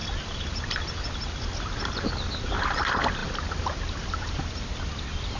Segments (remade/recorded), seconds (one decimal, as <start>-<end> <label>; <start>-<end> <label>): 0.0-5.4 recorded